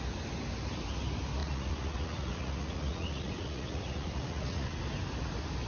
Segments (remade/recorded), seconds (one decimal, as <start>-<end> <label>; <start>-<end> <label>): 0.0-1.4 recorded; 1.4-4.8 remade; 4.8-5.7 recorded